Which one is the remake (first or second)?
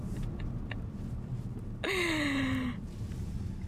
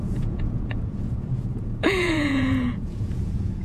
second